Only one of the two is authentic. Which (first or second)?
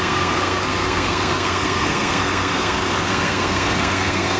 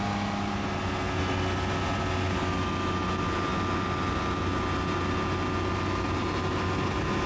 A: second